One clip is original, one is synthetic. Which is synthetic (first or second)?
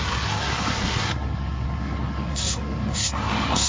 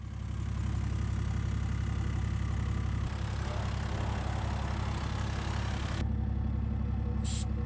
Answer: first